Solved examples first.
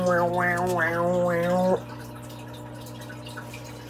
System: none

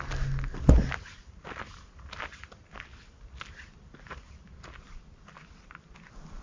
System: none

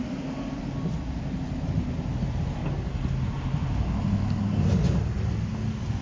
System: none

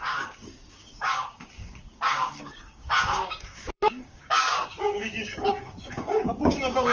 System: codec, DAC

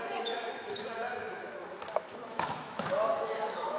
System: autoencoder, DAC-VAE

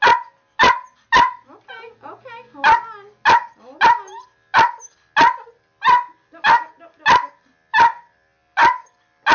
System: none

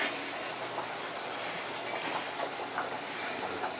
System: none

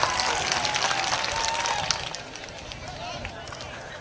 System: none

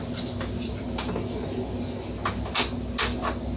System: none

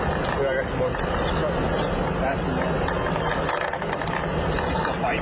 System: none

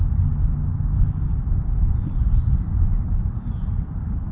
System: none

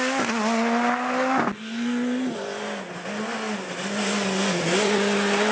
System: none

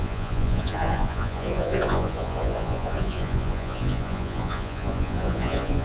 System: vocoder, Vocos